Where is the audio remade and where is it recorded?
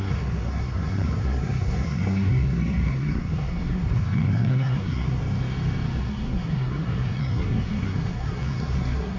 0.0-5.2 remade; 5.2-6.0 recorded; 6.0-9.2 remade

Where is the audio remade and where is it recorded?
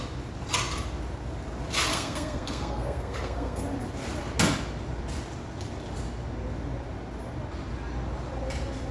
0.0-1.9 recorded; 1.9-3.6 remade; 3.6-8.9 recorded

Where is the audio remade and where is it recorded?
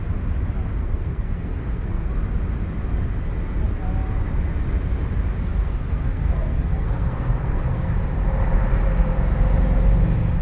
0.0-0.8 recorded; 0.8-2.1 remade; 2.1-5.4 recorded; 5.4-7.9 remade; 7.9-10.4 recorded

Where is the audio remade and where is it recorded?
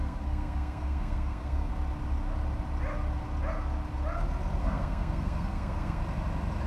0.0-1.7 remade; 1.7-4.6 recorded; 4.6-6.0 remade; 6.0-6.7 recorded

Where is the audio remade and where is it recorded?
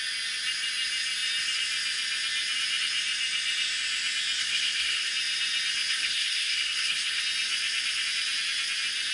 0.0-4.4 recorded; 4.4-5.1 remade; 5.1-5.9 recorded; 5.9-7.2 remade; 7.2-9.1 recorded